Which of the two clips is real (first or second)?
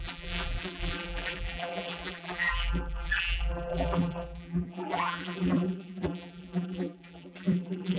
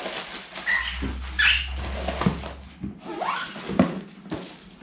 second